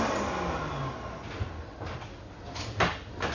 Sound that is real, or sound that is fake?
real